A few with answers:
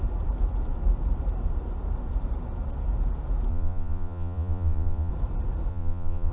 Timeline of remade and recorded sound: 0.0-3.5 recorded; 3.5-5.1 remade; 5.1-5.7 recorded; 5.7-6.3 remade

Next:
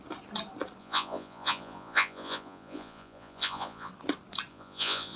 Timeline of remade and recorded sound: 0.0-0.8 recorded; 0.8-3.9 remade; 3.9-4.5 recorded; 4.5-5.2 remade

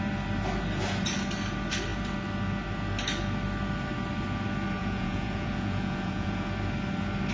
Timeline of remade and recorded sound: 0.0-4.8 recorded; 4.8-6.5 remade; 6.5-7.3 recorded

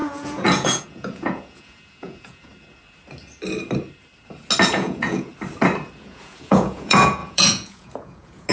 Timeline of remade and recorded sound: 0.0-2.5 remade; 2.5-4.7 recorded; 4.7-5.3 remade; 5.3-6.0 recorded; 6.0-8.5 remade